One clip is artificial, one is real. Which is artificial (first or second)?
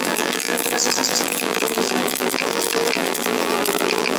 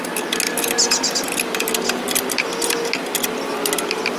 first